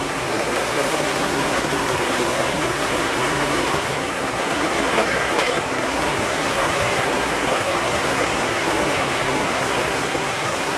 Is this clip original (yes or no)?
no